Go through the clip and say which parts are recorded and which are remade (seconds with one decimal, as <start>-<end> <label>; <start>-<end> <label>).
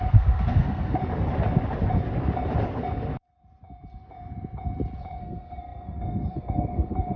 0.0-1.0 remade; 1.0-5.2 recorded; 5.2-7.2 remade